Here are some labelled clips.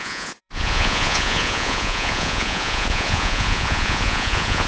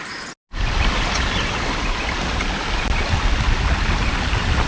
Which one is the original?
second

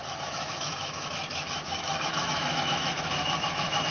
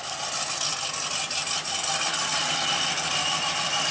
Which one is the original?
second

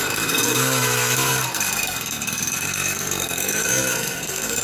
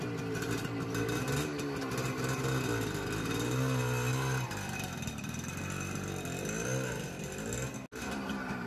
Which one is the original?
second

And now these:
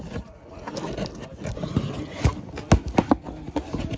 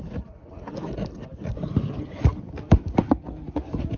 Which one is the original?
first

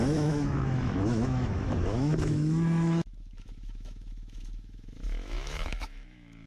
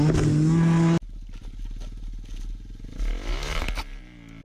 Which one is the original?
second